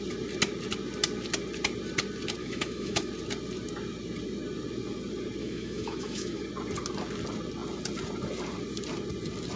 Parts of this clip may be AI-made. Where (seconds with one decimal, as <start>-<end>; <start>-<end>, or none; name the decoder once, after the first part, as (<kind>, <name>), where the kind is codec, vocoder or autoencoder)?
2.4-3.1 (autoencoder, DAC-VAE); 5.4-6.4

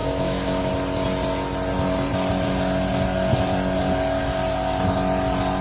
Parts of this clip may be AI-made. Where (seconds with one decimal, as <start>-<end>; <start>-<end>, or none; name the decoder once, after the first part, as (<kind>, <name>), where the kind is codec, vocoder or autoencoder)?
0.0-0.7 (autoencoder, DAC-VAE)

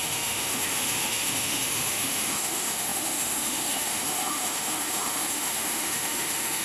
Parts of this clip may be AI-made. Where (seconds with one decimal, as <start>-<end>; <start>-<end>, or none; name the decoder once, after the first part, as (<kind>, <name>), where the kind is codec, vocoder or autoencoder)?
0.0-6.6 (autoencoder, DAC-VAE)

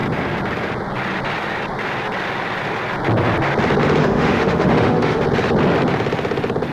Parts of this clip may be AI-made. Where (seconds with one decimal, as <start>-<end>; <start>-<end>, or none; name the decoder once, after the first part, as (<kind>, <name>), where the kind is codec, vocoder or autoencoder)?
4.0-5.2 (autoencoder, DAC-VAE)